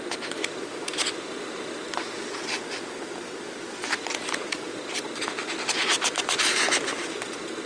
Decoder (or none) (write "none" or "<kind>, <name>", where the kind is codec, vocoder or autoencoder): none